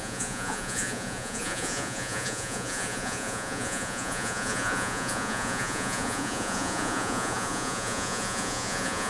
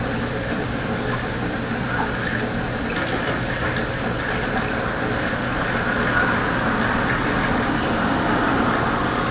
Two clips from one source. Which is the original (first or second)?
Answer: second